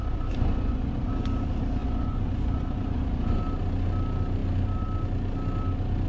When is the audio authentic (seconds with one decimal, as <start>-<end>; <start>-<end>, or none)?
1.1-1.8; 3.4-6.1